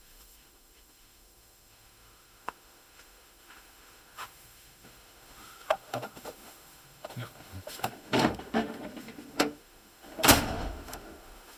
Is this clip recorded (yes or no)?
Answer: no